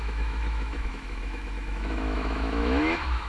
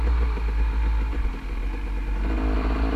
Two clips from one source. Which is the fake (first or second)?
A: first